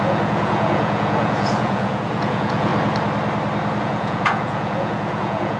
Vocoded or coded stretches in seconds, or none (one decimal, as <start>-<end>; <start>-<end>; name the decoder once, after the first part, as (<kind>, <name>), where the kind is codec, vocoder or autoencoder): 0.0-2.7 (vocoder, Vocos); 3.8-5.6